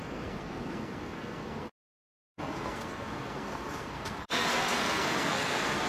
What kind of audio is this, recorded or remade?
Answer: remade